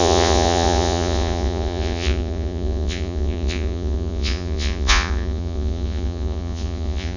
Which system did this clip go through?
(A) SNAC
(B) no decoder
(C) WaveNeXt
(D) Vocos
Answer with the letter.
D